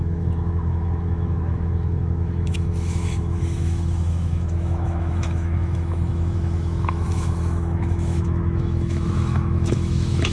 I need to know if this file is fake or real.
fake